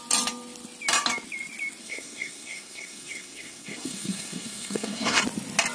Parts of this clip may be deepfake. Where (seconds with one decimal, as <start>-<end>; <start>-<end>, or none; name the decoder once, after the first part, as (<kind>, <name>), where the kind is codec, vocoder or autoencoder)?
1.8-5.2 (codec, SNAC)